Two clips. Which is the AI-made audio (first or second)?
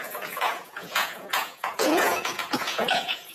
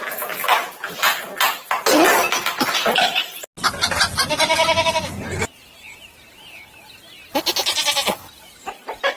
first